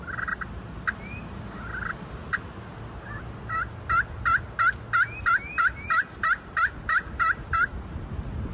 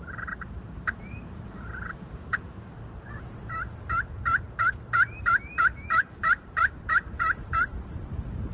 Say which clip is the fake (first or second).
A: second